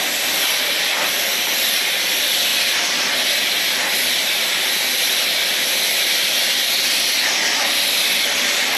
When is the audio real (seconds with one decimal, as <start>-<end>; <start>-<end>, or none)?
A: 0.0-8.8